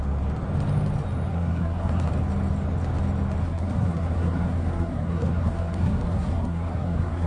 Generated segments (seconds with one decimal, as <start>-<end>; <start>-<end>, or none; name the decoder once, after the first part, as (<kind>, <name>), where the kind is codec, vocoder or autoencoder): 1.3-2.1 (codec, SNAC); 3.4-7.3